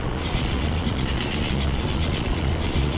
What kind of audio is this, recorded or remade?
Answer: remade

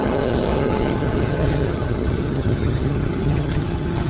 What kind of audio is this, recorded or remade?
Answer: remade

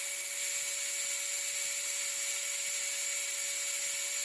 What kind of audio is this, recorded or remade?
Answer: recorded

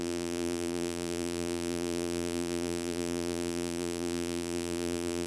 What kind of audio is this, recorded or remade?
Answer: remade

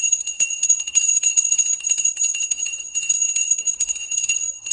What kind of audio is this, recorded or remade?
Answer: remade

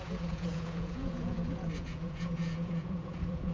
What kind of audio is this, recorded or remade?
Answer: remade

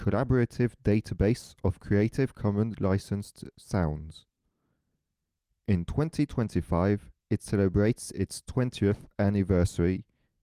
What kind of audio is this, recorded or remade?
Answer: recorded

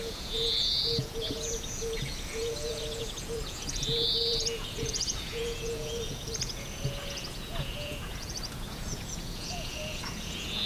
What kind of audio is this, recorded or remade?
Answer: remade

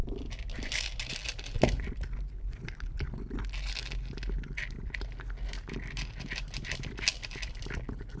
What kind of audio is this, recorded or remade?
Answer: recorded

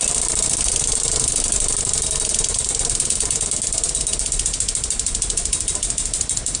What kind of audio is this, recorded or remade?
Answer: recorded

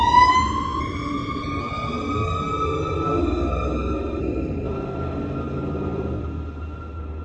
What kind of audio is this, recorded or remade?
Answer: recorded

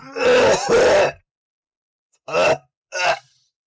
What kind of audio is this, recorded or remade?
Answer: recorded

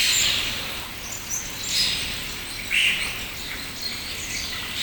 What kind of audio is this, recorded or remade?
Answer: recorded